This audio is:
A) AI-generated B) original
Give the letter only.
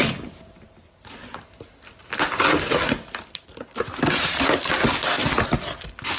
B